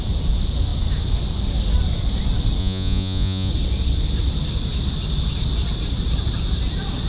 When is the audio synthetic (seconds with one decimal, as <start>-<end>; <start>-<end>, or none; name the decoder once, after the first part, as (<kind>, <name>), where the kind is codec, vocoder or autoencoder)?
2.6-3.5 (vocoder, Vocos)